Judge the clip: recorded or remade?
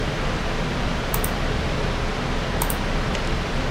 remade